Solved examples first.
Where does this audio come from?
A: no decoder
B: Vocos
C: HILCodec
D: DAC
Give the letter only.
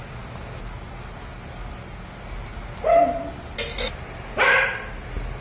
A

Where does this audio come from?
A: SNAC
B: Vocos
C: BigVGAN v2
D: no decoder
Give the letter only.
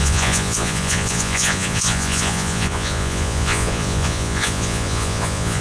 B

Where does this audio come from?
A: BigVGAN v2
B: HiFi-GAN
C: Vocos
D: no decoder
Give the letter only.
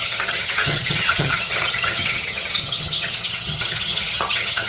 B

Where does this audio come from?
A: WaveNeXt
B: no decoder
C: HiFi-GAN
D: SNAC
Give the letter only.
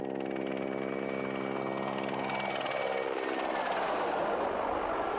B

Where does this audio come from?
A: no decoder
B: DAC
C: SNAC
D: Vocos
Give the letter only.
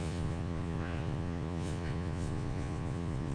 D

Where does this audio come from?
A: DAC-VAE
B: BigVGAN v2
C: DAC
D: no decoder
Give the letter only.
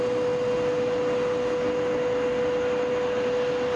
D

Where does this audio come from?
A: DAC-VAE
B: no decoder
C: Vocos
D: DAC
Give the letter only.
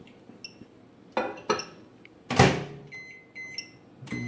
B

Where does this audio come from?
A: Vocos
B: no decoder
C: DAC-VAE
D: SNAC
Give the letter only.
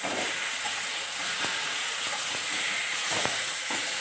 A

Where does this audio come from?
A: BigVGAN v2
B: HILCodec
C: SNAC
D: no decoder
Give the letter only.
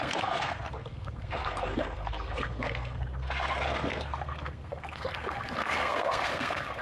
C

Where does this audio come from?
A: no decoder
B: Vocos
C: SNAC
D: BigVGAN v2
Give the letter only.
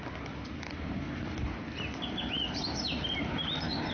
A